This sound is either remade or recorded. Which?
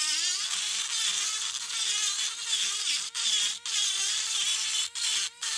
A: recorded